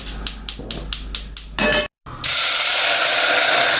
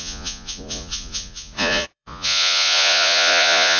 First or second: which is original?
first